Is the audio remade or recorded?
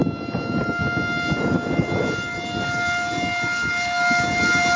recorded